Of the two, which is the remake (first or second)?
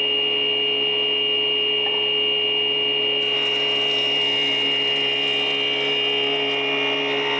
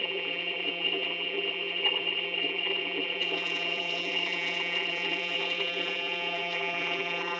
second